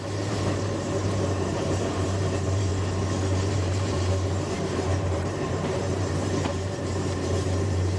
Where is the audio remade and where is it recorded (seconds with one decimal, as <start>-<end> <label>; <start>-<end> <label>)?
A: 0.0-2.7 remade; 2.7-3.5 recorded; 3.5-8.0 remade